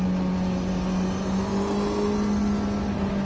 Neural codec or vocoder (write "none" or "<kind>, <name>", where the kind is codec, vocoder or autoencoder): none